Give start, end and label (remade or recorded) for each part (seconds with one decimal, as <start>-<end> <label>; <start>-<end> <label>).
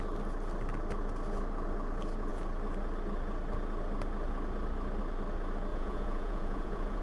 0.0-5.7 recorded; 5.7-7.0 remade